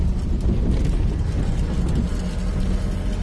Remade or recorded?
recorded